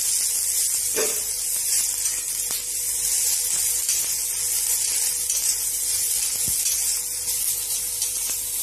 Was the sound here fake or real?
real